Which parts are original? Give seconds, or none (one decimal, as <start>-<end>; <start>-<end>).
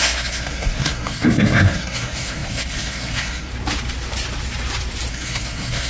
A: 3.5-5.1